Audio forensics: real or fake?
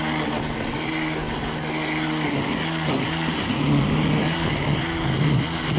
real